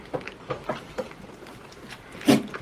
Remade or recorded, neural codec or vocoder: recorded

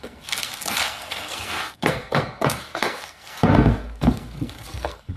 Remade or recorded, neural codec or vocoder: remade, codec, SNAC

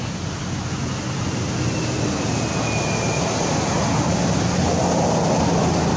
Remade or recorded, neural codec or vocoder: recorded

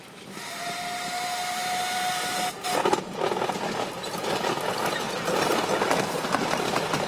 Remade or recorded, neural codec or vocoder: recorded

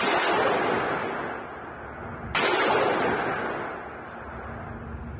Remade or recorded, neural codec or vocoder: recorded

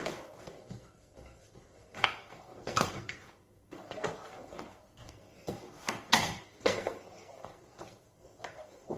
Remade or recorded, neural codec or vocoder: remade, codec, SNAC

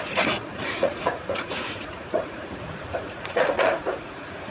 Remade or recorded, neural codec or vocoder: remade, vocoder, Vocos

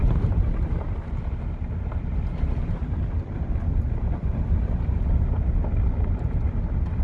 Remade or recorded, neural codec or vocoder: recorded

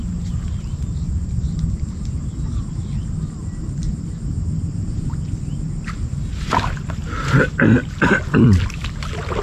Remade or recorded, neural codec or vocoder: recorded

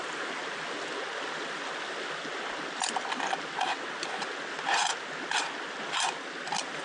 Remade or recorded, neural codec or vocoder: recorded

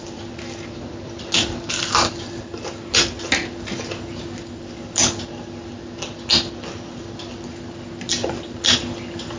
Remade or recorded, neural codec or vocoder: recorded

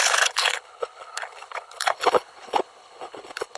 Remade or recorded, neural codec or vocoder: remade, codec, HILCodec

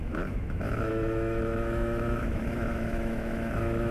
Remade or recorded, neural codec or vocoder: remade, autoencoder, DAC-VAE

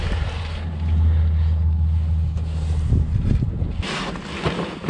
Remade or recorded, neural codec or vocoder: recorded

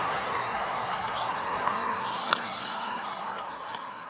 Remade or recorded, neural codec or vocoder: remade, codec, SNAC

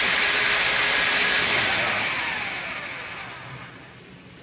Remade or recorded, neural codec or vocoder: recorded